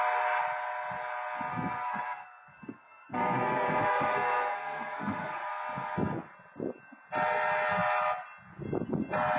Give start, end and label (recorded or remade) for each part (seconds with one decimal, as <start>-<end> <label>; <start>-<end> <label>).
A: 0.0-1.5 recorded; 1.5-5.5 remade; 5.5-9.4 recorded